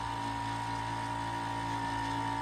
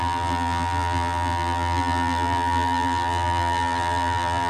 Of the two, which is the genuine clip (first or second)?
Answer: first